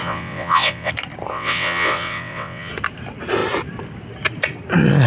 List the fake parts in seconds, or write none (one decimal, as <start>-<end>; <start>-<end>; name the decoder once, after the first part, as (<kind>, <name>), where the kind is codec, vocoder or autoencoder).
0.0-0.9 (vocoder, WaveNeXt); 1.3-2.7